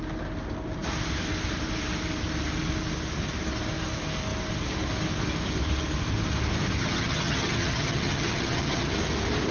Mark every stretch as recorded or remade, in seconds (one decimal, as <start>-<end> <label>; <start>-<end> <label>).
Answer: 0.0-6.8 recorded; 6.8-8.9 remade; 8.9-9.5 recorded